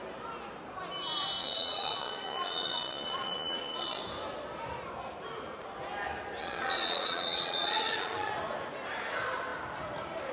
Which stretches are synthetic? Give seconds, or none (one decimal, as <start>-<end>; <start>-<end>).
1.4-4.0; 6.4-8.3